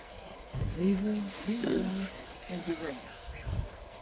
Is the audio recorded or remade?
remade